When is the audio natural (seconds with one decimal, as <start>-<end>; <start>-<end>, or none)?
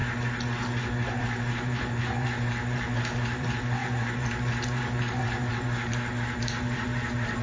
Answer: 0.0-1.2